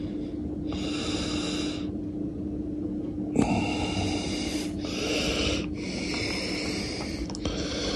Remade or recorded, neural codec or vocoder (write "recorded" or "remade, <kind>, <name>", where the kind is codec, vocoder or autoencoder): recorded